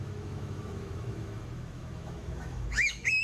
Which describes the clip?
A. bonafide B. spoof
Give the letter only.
B